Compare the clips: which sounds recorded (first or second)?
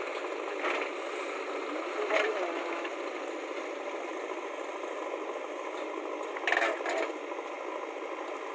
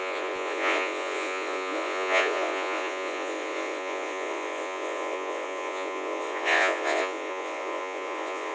first